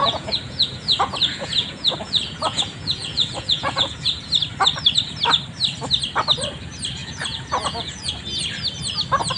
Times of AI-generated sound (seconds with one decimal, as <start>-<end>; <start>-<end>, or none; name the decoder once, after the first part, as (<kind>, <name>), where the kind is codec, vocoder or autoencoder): 0.0-4.3 (vocoder, Vocos); 7.0-8.1